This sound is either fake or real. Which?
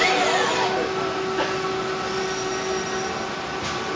real